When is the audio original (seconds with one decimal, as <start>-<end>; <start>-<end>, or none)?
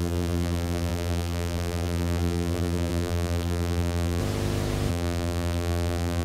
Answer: 4.2-4.9